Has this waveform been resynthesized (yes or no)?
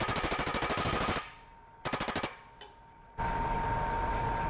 no